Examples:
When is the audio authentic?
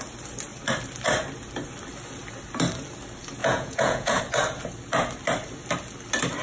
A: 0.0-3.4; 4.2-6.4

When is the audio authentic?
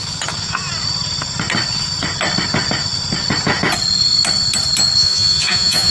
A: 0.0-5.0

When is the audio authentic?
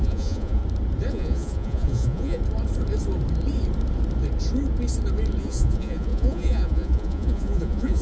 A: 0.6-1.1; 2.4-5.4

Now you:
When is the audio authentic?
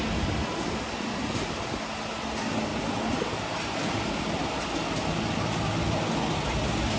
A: 0.0-7.0